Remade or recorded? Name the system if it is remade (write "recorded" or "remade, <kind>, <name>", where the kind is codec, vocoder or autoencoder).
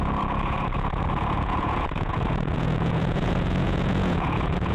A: remade, vocoder, Vocos